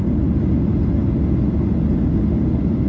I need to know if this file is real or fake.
real